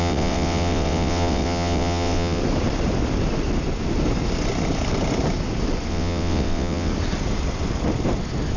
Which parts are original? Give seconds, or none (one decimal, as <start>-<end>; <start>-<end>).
2.4-5.9; 6.9-8.6